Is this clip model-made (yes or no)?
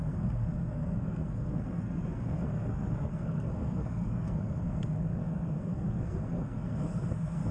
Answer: yes